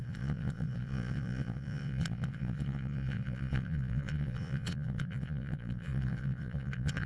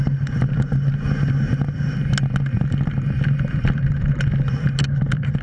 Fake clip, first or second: first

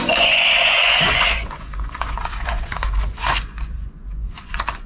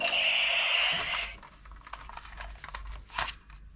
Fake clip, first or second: first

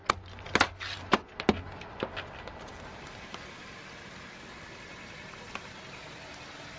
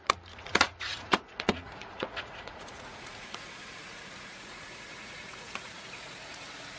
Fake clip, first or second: second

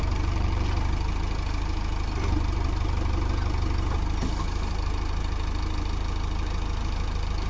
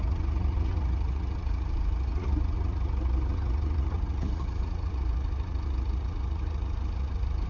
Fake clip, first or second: second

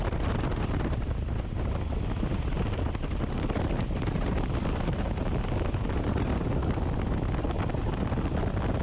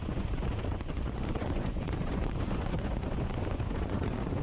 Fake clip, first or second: second